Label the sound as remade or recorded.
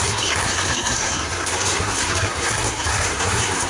remade